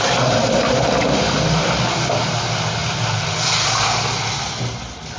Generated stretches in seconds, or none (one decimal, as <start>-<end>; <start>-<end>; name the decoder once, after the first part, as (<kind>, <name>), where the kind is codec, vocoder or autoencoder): none